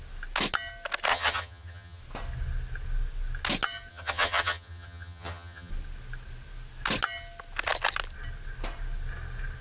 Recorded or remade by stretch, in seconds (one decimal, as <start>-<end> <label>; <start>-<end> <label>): 0.0-1.1 recorded; 1.1-2.0 remade; 2.0-3.9 recorded; 3.9-5.7 remade; 5.7-9.6 recorded